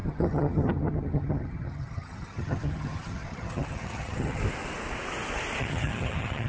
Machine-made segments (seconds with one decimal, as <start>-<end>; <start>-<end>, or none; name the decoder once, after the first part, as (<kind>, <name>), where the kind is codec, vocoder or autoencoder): 0.0-4.4 (vocoder, HiFi-GAN); 5.6-6.5